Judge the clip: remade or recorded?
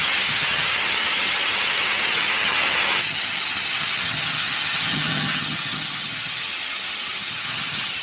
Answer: remade